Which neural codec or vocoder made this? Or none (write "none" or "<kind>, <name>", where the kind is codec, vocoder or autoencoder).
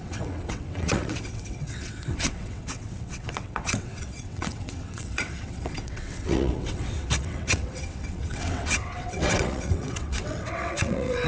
vocoder, WaveNeXt